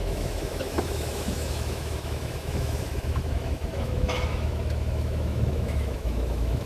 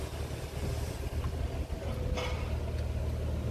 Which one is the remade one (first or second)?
first